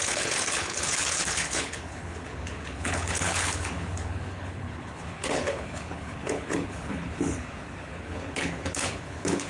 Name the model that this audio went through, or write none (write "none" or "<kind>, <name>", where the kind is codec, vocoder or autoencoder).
codec, HILCodec